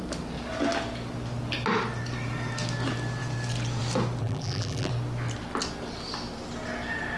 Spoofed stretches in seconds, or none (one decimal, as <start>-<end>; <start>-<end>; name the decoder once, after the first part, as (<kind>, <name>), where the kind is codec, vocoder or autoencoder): 4.2-4.9 (vocoder, BigVGAN v2)